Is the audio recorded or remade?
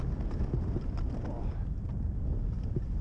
recorded